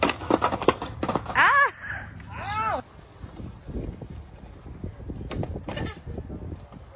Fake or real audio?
real